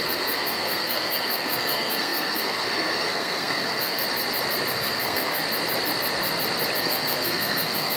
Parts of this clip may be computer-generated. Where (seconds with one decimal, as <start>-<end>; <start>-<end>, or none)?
0.0-4.0; 4.7-5.4; 6.8-8.0